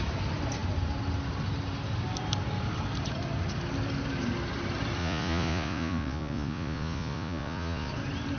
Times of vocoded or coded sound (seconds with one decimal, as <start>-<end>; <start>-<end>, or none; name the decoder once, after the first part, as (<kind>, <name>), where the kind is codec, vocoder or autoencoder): 5.0-7.9 (vocoder, Vocos)